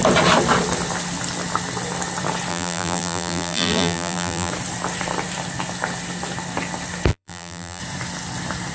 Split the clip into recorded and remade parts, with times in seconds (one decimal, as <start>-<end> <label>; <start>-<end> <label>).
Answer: 0.0-2.5 recorded; 2.5-4.5 remade; 4.5-7.1 recorded; 7.1-7.8 remade; 7.8-8.7 recorded